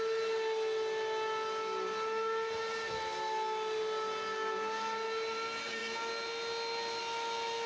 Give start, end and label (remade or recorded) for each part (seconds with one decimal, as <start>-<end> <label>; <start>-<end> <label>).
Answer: 0.0-7.7 recorded